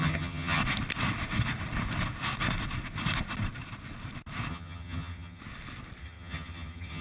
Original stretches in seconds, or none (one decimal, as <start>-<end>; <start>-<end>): 0.6-4.5; 5.4-6.0